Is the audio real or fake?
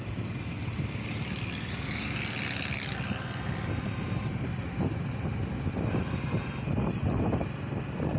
real